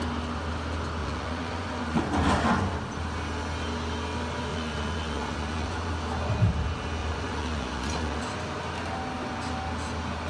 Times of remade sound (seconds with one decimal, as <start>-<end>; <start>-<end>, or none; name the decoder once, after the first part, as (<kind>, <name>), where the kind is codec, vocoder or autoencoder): 1.0-2.0 (vocoder, Vocos); 4.5-5.9; 7.0-8.2